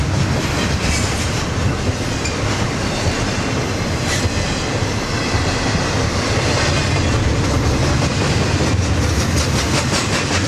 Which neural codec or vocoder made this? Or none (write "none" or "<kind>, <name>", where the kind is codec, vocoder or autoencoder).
none